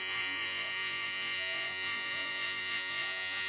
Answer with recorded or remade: remade